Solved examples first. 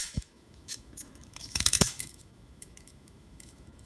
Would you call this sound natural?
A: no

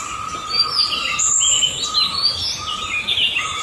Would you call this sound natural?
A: yes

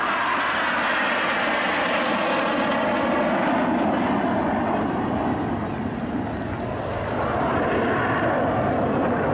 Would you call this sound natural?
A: yes